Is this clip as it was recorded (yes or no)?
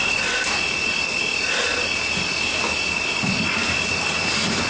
yes